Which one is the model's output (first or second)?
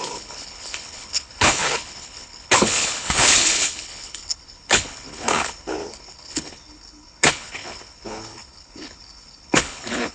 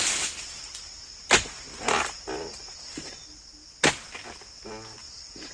first